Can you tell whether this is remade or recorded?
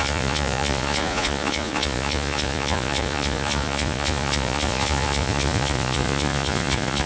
remade